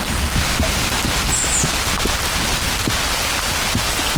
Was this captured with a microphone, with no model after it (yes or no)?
yes